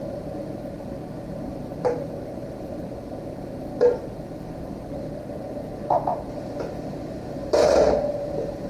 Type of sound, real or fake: fake